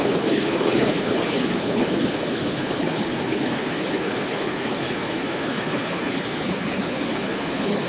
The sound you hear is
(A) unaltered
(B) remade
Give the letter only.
B